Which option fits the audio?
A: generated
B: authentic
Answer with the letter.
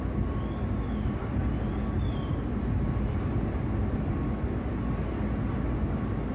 B